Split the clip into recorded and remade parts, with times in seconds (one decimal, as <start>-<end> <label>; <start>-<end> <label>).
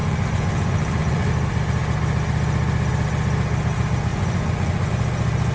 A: 0.0-1.3 remade; 1.3-4.1 recorded; 4.1-4.9 remade; 4.9-5.5 recorded